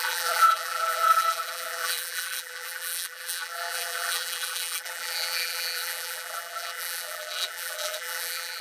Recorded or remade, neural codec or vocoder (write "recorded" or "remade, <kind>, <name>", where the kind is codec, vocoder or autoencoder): remade, vocoder, BigVGAN v2